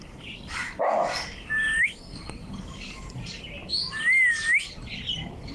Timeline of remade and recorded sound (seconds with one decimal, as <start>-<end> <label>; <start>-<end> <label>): 0.0-3.0 remade; 3.0-5.5 recorded

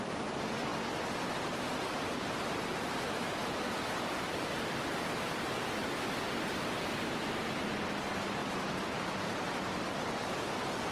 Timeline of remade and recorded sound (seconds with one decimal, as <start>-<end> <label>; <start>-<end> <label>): 0.0-8.4 recorded; 8.4-9.4 remade; 9.4-10.9 recorded

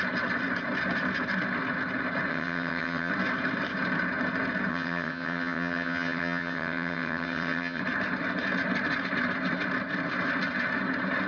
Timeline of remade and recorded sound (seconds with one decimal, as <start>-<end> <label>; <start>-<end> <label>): 0.0-2.3 recorded; 2.3-3.1 remade; 3.1-4.7 recorded; 4.7-7.8 remade; 7.8-11.3 recorded

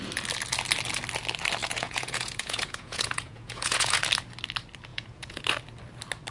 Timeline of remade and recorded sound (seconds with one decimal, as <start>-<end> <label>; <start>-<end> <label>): 0.0-1.6 recorded; 1.6-4.0 remade; 4.0-4.9 recorded; 4.9-5.4 remade; 5.4-6.3 recorded

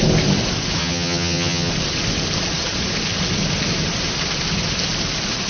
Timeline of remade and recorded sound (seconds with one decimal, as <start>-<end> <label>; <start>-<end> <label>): 0.0-0.8 recorded; 0.8-1.7 remade; 1.7-5.5 recorded

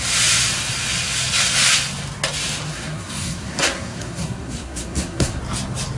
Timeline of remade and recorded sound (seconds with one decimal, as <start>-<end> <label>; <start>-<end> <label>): 0.0-2.7 recorded; 2.7-5.4 remade; 5.4-6.0 recorded

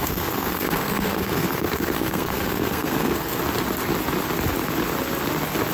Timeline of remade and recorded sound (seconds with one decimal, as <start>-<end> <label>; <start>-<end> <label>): 0.0-3.4 remade; 3.4-5.7 recorded

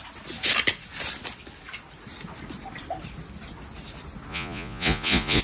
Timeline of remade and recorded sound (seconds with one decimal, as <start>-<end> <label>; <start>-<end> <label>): 0.0-4.3 recorded; 4.3-5.4 remade